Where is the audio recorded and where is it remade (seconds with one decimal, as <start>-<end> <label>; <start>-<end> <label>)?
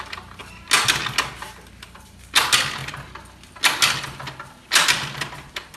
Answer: 0.0-5.8 recorded